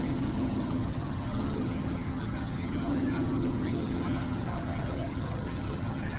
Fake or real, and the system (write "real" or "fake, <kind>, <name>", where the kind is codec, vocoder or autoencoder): fake, vocoder, HiFi-GAN